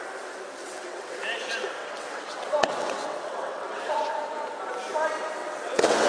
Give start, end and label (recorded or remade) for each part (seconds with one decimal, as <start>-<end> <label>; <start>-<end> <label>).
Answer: 0.0-0.6 recorded; 0.6-1.2 remade; 1.2-1.8 recorded; 1.8-3.9 remade; 3.9-5.4 recorded; 5.4-6.1 remade